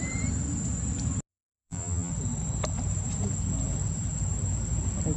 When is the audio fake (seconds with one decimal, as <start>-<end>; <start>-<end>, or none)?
1.3-2.1